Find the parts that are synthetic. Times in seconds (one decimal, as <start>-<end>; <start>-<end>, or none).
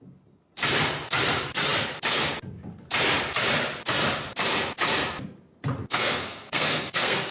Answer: 5.9-7.3